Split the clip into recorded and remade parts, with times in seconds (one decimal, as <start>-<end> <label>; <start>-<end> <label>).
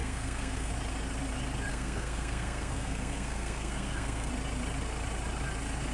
0.0-0.7 remade; 0.7-1.7 recorded; 1.7-4.3 remade; 4.3-5.9 recorded